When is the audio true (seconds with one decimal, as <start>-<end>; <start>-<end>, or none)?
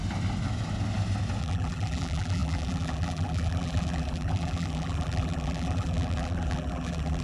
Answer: 0.0-1.4